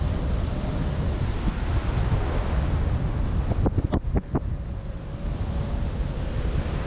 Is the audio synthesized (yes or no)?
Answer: no